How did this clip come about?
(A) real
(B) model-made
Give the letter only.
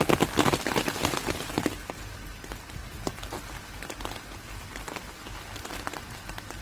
A